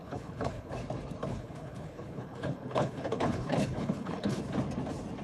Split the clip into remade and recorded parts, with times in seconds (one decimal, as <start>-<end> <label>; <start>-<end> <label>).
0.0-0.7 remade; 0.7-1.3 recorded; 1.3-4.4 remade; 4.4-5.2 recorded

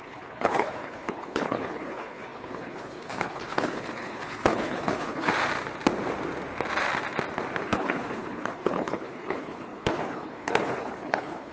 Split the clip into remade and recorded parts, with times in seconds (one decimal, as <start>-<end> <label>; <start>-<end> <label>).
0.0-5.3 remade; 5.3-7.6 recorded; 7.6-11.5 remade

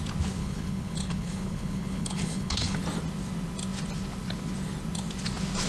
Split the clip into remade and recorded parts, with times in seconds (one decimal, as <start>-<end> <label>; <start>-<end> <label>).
0.0-0.4 recorded; 0.4-2.8 remade; 2.8-5.7 recorded

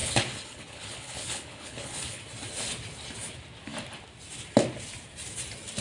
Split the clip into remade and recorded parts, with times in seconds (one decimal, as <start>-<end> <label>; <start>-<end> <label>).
0.0-2.2 remade; 2.2-5.8 recorded

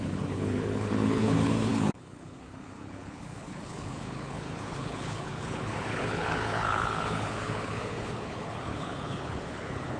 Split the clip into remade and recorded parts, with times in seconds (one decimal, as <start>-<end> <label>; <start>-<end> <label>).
0.0-10.0 remade

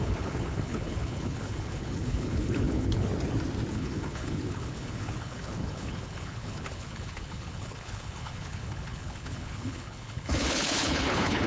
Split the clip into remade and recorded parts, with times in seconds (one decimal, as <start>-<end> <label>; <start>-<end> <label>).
0.0-3.1 remade; 3.1-3.7 recorded; 3.7-11.5 remade

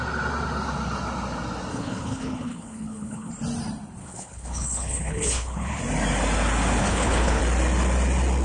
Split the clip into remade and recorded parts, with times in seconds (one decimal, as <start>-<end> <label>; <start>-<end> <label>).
0.0-1.7 recorded; 1.7-3.3 remade; 3.3-4.0 recorded; 4.0-5.8 remade; 5.8-6.8 recorded; 6.8-7.4 remade; 7.4-8.4 recorded

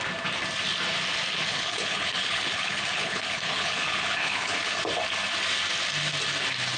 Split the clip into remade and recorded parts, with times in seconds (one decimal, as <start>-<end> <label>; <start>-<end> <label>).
0.0-1.5 recorded; 1.5-4.8 remade; 4.8-6.8 recorded